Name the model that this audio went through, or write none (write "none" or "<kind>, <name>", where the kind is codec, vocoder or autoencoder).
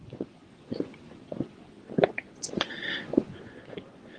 vocoder, Vocos